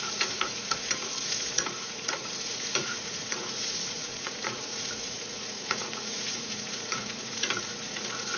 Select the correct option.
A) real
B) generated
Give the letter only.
B